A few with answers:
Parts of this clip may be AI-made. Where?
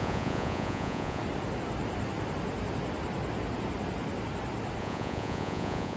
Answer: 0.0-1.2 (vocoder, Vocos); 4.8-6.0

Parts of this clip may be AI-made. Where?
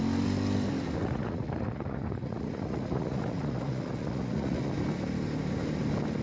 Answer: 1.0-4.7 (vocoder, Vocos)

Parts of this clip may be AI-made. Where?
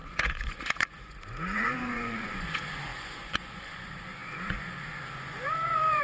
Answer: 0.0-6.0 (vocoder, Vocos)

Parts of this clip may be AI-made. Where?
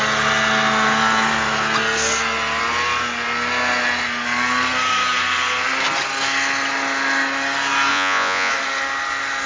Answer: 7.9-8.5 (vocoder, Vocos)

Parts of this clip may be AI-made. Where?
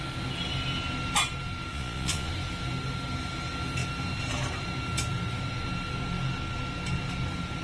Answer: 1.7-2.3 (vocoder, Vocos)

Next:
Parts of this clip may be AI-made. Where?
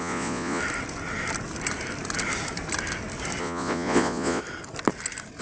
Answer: 0.0-0.6 (vocoder, Vocos); 3.4-4.4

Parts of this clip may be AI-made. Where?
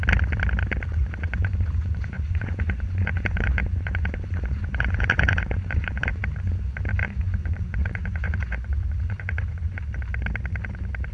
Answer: 0.9-6.2 (vocoder, Vocos); 7.0-9.8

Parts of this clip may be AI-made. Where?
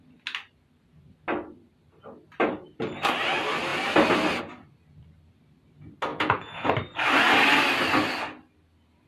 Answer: 6.1-6.7 (vocoder, Vocos)